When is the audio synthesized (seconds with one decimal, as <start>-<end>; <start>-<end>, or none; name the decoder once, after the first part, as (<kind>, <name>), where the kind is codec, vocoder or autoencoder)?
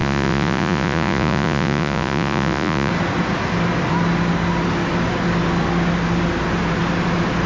0.0-2.9 (vocoder, Vocos)